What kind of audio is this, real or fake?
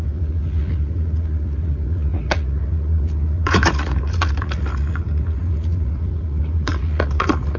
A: fake